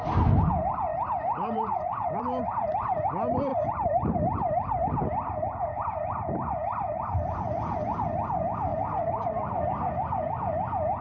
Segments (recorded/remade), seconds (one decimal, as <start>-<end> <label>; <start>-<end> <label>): 0.0-0.9 recorded; 0.9-3.1 remade; 3.1-3.5 recorded; 3.5-4.8 remade; 4.8-8.7 recorded; 8.7-9.2 remade; 9.2-11.0 recorded